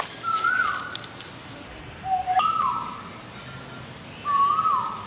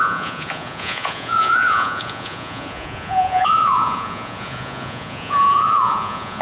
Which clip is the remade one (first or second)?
second